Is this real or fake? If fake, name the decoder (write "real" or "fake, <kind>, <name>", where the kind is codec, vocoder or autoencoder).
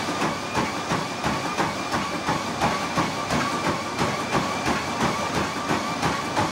real